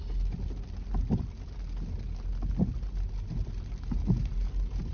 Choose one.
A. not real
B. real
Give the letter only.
B